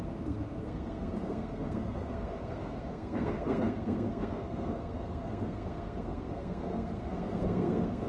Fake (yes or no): yes